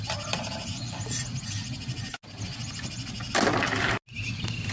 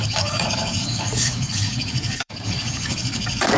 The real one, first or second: first